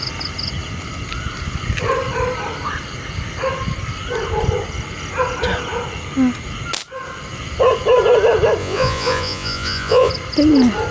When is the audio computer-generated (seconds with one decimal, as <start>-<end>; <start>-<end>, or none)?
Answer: 8.6-10.1